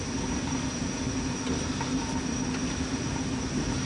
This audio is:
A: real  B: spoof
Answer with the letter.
A